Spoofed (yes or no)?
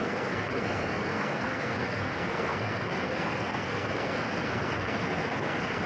yes